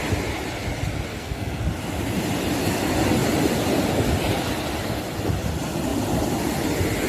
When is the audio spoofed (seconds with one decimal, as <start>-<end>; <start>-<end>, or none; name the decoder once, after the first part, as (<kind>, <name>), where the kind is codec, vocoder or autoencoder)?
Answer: 1.1-1.6 (codec, SNAC)